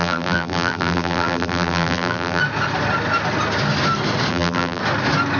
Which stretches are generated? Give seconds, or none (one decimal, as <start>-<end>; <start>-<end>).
0.0-2.4; 4.3-4.8